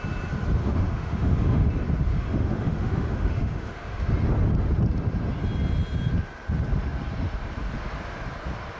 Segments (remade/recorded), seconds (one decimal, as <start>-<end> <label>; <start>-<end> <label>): 0.0-0.6 recorded; 0.6-1.7 remade; 1.7-2.1 recorded; 2.1-4.1 remade; 4.1-8.8 recorded